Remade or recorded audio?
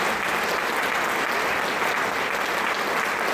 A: recorded